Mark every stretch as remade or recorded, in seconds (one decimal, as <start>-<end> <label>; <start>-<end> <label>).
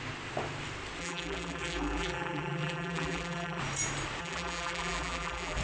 0.0-1.0 recorded; 1.0-3.6 remade; 3.6-4.2 recorded; 4.2-5.6 remade